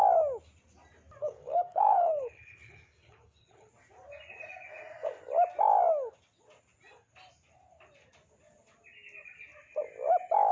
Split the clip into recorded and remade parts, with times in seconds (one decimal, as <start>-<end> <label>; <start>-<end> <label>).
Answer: 0.0-1.2 recorded; 1.2-3.7 remade; 3.7-10.5 recorded